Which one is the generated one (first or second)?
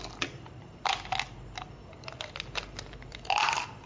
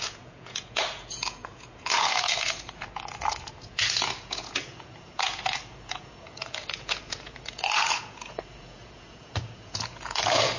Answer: second